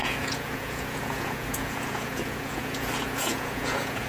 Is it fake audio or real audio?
fake